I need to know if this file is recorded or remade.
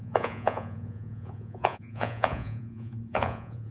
remade